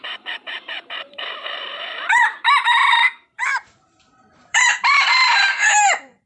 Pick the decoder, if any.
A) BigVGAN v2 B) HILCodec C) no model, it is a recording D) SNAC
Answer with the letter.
A